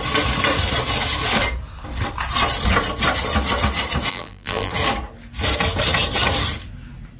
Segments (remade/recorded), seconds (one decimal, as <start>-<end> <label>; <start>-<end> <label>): 0.0-4.1 recorded; 4.1-4.7 remade; 4.7-7.2 recorded